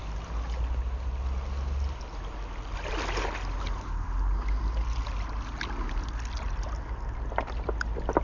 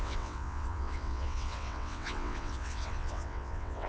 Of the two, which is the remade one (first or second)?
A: second